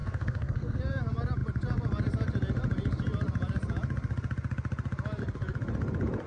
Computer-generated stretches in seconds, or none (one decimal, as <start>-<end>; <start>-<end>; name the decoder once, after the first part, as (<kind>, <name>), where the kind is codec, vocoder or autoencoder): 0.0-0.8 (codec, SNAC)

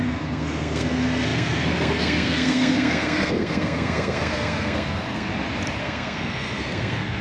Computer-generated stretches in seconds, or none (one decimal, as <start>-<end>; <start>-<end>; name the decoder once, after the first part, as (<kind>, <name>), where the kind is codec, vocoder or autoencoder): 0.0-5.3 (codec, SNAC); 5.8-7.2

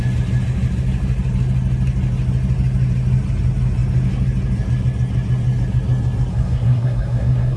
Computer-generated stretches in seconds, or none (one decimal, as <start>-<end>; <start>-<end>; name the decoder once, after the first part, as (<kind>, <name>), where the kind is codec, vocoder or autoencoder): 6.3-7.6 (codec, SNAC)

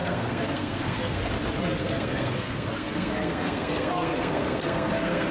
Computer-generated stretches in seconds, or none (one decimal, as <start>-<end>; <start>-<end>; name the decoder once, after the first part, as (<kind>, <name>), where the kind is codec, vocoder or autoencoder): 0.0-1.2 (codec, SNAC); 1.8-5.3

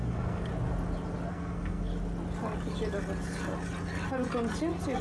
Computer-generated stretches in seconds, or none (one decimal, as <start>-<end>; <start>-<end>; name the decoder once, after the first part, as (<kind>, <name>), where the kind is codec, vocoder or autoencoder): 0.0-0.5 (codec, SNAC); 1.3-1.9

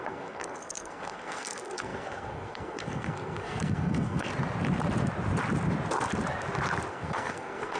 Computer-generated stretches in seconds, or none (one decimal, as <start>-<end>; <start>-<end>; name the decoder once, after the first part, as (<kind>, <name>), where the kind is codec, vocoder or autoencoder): 0.0-4.3 (codec, SNAC); 6.9-7.8